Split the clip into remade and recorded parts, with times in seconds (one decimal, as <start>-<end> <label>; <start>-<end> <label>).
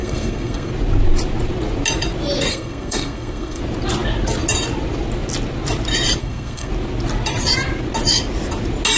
0.0-0.7 remade; 0.7-2.5 recorded; 2.5-3.6 remade; 3.6-6.2 recorded; 6.2-6.7 remade; 6.7-9.0 recorded